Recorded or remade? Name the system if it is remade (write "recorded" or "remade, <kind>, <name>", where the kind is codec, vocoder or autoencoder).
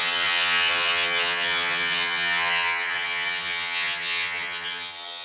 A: remade, vocoder, HiFi-GAN